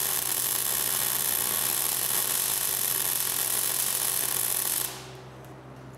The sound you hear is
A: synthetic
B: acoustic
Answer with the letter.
B